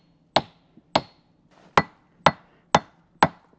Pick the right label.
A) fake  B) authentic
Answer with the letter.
B